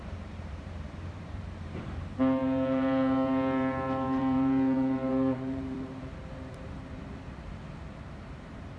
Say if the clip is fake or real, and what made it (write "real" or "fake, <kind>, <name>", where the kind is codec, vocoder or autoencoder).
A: fake, vocoder, BigVGAN v2